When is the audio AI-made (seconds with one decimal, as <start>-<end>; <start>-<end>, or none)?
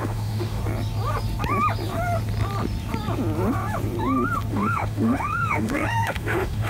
0.0-0.6; 4.5-6.7